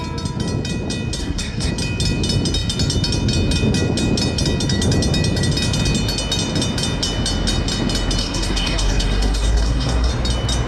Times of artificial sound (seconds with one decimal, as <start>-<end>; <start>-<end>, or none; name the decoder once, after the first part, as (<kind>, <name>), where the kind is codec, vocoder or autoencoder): 1.2-1.7 (codec, SNAC); 8.2-10.1